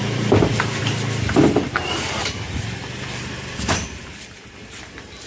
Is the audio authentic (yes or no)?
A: no